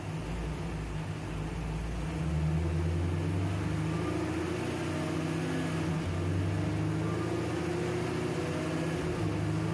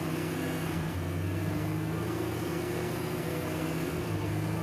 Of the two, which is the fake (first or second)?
second